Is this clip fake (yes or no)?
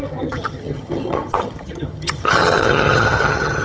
yes